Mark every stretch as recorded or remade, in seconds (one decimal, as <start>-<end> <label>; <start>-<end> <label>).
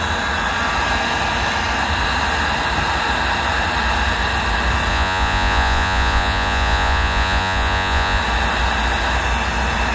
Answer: 0.0-4.9 recorded; 4.9-8.2 remade; 8.2-9.9 recorded